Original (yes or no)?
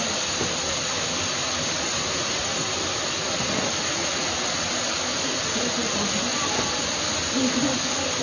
yes